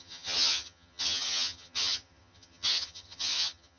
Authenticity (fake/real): fake